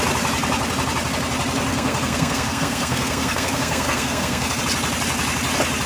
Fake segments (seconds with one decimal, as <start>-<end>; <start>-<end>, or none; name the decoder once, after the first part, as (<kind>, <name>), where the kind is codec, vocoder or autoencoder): 1.7-4.6 (codec, SNAC)